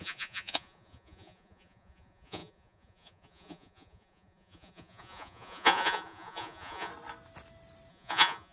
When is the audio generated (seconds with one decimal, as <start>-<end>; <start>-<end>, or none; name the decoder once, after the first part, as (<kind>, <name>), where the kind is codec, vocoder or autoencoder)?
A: 0.0-6.9 (vocoder, Vocos); 7.9-8.5